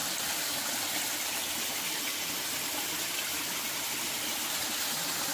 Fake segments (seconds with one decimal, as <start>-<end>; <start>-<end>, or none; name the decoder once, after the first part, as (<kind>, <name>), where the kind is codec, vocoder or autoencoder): none